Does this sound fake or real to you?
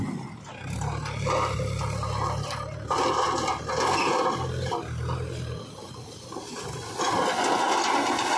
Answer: real